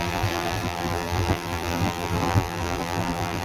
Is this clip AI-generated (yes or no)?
yes